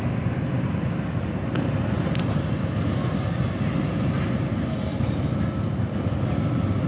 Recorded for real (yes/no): yes